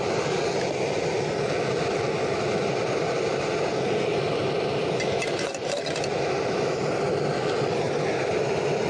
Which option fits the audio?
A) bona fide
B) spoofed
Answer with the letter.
A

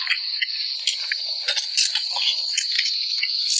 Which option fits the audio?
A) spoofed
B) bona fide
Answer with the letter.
B